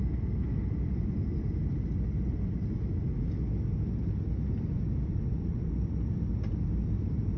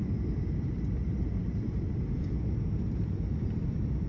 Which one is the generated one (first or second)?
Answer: second